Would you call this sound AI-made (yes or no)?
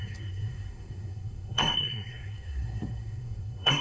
yes